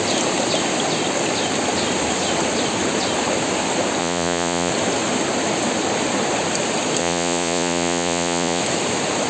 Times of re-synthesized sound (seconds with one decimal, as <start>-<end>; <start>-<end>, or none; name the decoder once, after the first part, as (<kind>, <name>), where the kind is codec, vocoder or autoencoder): 4.0-4.7 (vocoder, Vocos); 7.0-8.6